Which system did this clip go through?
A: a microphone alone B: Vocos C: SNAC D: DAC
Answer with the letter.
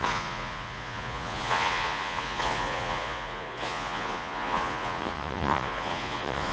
B